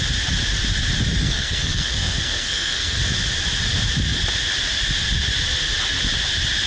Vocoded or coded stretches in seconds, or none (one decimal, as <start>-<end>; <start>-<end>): 1.2-3.0

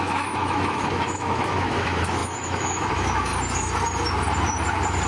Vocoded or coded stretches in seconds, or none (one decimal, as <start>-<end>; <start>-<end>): 0.0-3.3

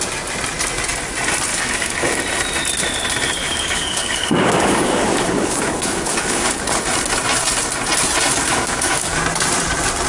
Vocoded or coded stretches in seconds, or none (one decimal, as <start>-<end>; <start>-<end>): 1.5-2.2; 3.4-6.6; 8.5-9.2

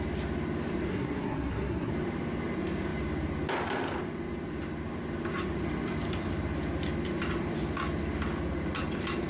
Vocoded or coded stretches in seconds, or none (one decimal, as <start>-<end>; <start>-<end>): 0.9-1.9

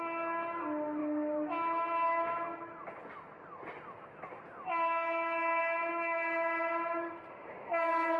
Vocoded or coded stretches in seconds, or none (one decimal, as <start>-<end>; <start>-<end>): none

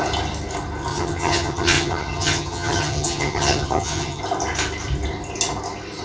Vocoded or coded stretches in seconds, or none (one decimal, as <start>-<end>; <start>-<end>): 0.9-4.2

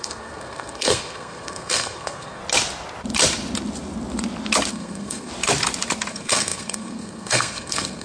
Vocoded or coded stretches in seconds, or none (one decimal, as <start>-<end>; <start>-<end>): 0.0-2.4; 4.7-5.3; 6.1-8.0

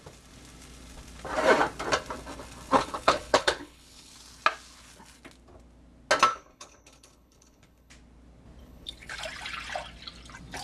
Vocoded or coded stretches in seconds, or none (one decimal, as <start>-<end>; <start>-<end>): 2.7-4.1; 6.3-7.9; 8.6-9.2